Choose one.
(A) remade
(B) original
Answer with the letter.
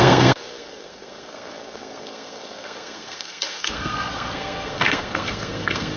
A